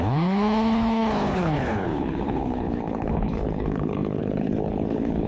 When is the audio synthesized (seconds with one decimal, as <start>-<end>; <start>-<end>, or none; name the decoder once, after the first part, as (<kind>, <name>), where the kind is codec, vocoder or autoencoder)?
0.0-5.3 (codec, HILCodec)